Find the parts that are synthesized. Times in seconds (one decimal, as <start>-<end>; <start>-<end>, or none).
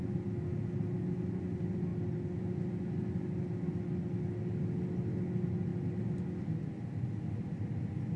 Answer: none